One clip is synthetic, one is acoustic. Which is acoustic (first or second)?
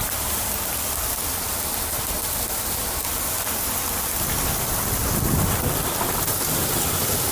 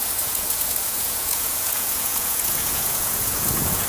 first